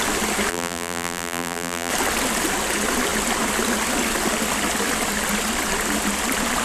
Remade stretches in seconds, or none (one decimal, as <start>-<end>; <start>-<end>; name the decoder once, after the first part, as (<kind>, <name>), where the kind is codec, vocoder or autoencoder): 0.5-1.9 (vocoder, BigVGAN v2)